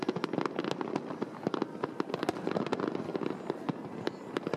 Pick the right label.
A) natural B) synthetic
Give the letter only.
A